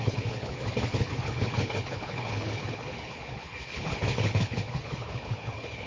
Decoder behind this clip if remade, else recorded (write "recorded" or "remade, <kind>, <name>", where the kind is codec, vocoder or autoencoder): remade, codec, HILCodec